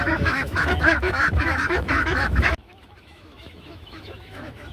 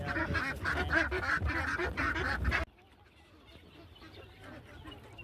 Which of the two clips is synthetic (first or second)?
first